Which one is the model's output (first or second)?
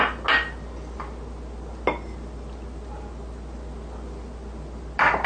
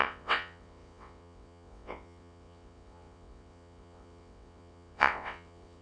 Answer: second